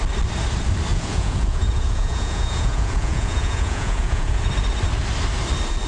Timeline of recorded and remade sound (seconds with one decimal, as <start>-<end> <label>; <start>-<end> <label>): 0.0-0.9 recorded; 0.9-4.4 remade; 4.4-5.9 recorded